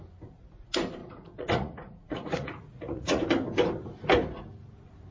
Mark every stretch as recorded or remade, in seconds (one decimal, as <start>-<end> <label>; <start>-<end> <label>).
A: 0.0-1.0 recorded; 1.0-3.2 remade; 3.2-5.1 recorded